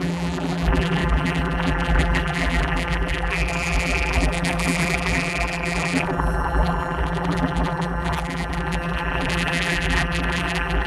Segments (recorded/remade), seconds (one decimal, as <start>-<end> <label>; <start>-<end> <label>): 0.0-10.9 remade